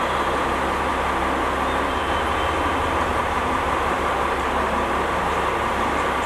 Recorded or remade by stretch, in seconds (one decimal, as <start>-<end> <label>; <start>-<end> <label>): 0.0-3.1 recorded; 3.1-5.8 remade; 5.8-6.3 recorded

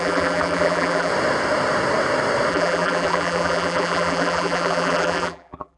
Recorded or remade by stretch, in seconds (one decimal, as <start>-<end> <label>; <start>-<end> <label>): 0.0-1.1 remade; 1.1-2.5 recorded; 2.5-5.8 remade

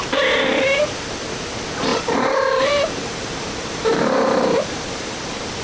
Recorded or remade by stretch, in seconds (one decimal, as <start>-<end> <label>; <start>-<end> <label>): 0.0-1.9 recorded; 1.9-5.6 remade

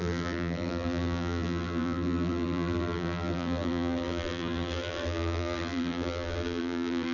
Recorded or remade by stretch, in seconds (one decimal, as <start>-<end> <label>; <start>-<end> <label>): 0.0-7.1 remade

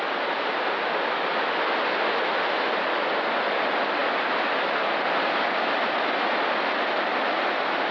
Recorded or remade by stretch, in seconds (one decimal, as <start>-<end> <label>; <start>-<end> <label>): 0.0-7.9 recorded

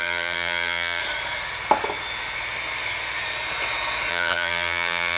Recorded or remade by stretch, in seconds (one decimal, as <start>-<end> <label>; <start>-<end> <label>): 0.0-1.0 remade; 1.0-4.1 recorded; 4.1-5.2 remade

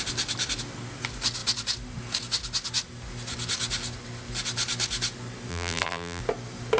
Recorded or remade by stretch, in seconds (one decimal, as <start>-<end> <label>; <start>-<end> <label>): 0.0-5.5 recorded; 5.5-6.2 remade; 6.2-6.8 recorded